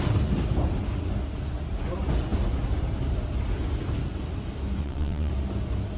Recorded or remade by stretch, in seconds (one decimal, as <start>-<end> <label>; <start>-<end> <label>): 0.0-4.8 recorded; 4.8-5.3 remade; 5.3-6.0 recorded